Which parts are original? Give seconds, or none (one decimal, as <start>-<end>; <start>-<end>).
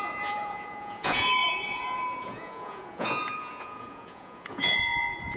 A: none